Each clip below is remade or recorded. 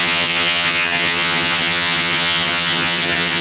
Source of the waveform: remade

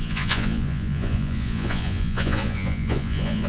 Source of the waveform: remade